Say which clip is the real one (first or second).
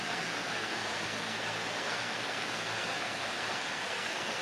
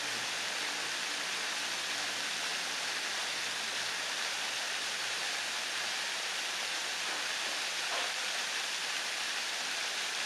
second